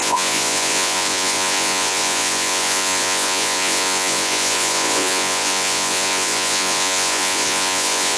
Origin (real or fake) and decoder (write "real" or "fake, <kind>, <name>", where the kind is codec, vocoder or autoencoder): fake, vocoder, Vocos